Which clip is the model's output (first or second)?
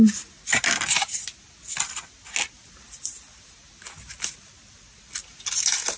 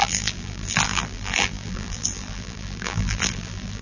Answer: second